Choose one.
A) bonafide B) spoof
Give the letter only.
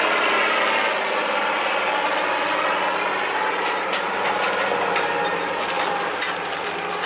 A